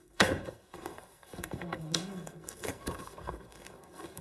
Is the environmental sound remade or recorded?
remade